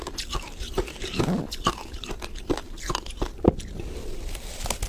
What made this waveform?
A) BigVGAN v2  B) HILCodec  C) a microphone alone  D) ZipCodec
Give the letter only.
C